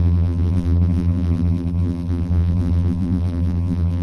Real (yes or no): no